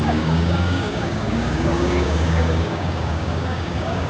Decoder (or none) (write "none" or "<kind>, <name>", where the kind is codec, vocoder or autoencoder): codec, DAC